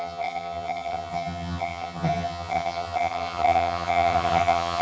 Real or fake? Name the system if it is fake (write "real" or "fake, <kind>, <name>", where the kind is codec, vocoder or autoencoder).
fake, vocoder, HiFi-GAN